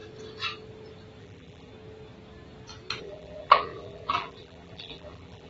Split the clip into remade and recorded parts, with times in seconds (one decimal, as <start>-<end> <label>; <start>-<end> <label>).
0.0-1.2 recorded; 1.2-1.7 remade; 1.7-3.0 recorded; 3.0-5.5 remade